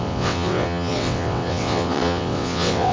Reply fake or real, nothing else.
fake